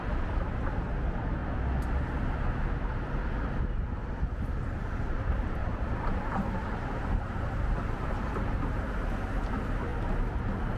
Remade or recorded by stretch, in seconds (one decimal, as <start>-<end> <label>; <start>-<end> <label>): 0.0-5.6 recorded; 5.6-8.9 remade; 8.9-10.8 recorded